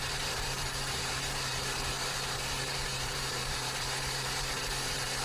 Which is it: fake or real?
fake